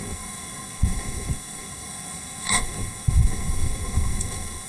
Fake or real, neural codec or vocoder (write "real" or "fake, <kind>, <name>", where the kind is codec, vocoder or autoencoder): fake, codec, SNAC